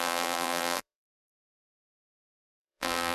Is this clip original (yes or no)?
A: no